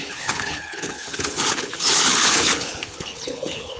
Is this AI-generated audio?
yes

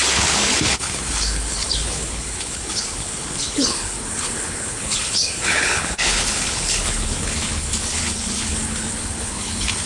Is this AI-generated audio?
yes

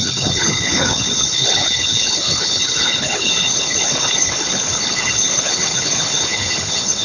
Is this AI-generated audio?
yes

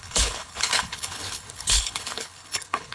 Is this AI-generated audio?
yes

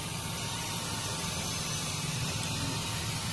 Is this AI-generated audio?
no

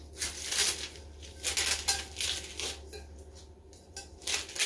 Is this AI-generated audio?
no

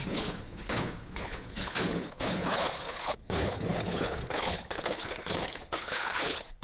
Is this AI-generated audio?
yes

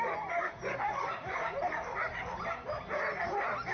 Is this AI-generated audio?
no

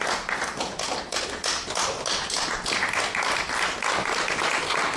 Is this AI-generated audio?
no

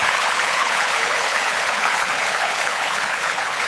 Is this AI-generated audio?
yes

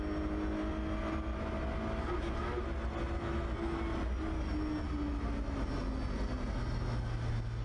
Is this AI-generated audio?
no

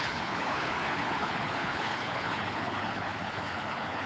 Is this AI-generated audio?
yes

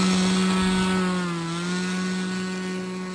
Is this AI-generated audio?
no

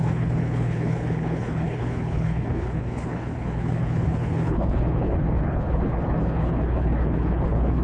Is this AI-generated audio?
yes